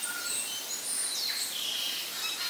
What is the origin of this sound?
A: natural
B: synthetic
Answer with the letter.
A